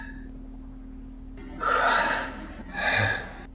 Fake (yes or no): no